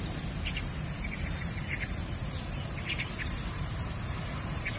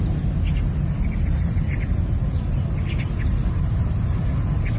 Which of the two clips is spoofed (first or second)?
first